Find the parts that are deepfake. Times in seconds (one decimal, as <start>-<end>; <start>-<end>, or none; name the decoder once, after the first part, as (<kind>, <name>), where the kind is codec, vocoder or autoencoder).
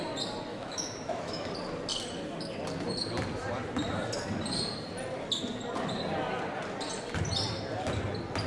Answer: 0.5-1.5 (autoencoder, DAC-VAE)